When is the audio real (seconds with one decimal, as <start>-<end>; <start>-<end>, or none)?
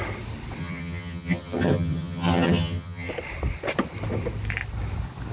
0.0-0.6; 3.1-5.3